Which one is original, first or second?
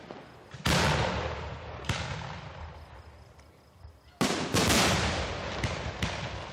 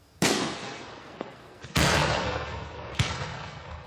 first